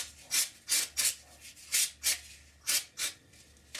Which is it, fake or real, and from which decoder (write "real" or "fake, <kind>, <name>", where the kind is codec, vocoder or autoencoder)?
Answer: real